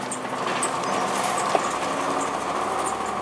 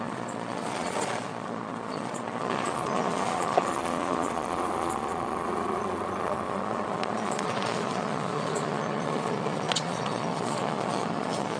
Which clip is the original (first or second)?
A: first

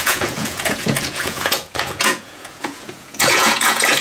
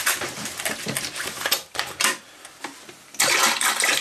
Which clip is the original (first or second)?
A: second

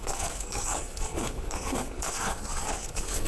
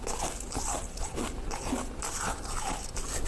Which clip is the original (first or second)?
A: second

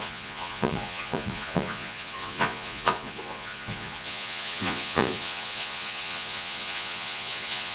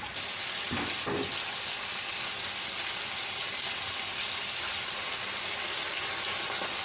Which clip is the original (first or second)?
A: second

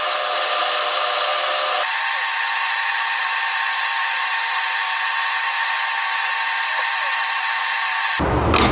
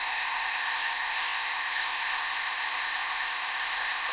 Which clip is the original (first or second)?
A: first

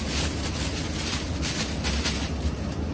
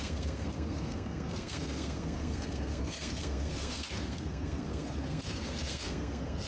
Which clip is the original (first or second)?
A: first